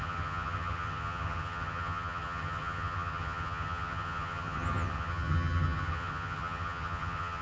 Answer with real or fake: fake